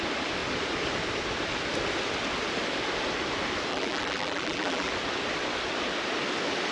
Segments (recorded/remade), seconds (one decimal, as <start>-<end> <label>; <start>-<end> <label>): 0.0-3.7 recorded; 3.7-4.9 remade; 4.9-6.7 recorded